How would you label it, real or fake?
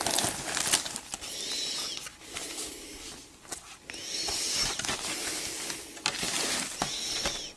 real